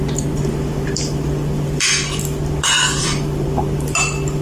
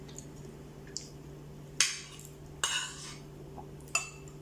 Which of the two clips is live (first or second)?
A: second